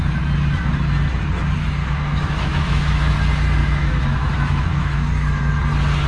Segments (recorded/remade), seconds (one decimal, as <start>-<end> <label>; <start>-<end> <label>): 0.0-1.8 recorded; 1.8-3.1 remade; 3.1-3.6 recorded; 3.6-5.5 remade; 5.5-6.1 recorded